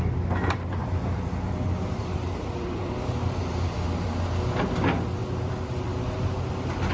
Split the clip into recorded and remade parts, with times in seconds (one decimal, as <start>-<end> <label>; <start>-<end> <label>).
0.0-0.8 recorded; 0.8-4.1 remade; 4.1-5.2 recorded; 5.2-5.9 remade; 5.9-6.9 recorded